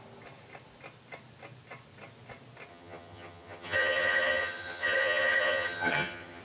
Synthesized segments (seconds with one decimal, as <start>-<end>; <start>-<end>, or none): 2.7-6.4